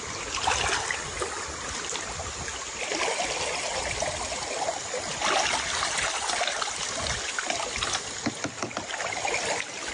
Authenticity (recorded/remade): recorded